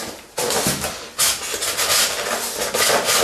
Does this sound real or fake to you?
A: real